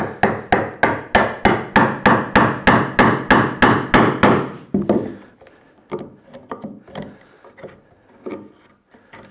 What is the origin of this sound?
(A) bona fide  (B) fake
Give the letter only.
A